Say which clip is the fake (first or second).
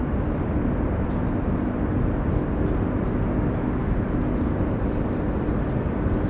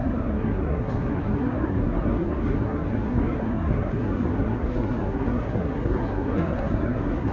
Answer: second